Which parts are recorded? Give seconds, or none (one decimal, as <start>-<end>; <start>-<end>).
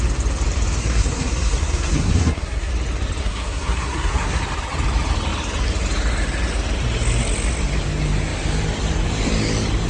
0.0-0.8; 2.7-3.2; 4.4-9.9